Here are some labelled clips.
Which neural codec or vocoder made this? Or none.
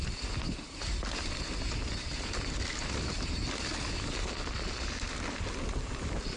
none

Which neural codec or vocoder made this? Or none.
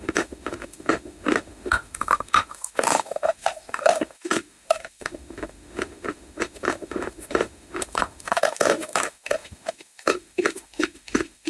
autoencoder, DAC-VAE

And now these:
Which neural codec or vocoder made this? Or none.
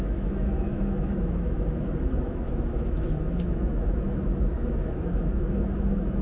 autoencoder, DAC-VAE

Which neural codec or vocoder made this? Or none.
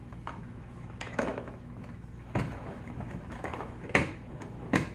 autoencoder, DAC-VAE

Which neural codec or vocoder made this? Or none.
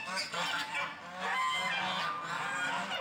none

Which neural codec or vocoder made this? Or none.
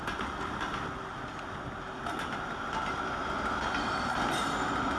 none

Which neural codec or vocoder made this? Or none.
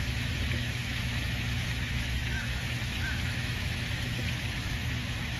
autoencoder, DAC-VAE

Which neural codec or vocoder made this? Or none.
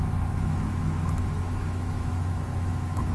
autoencoder, DAC-VAE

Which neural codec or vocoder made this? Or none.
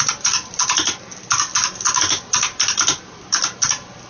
none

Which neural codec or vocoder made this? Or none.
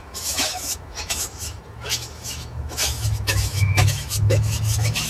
autoencoder, DAC-VAE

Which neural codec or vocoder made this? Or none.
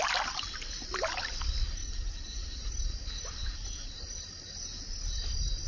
none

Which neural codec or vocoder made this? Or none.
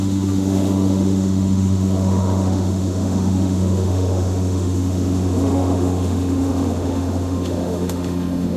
autoencoder, DAC-VAE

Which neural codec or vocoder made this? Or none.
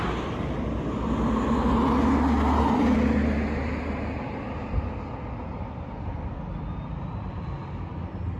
none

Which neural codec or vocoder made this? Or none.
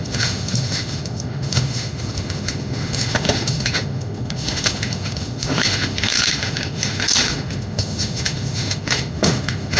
autoencoder, DAC-VAE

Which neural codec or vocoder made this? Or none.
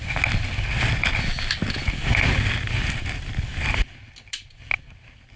none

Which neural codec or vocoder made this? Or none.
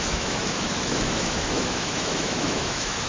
autoencoder, DAC-VAE